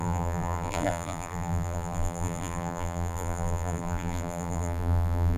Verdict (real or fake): fake